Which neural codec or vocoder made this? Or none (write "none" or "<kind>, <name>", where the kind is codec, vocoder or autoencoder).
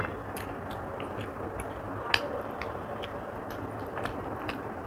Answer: none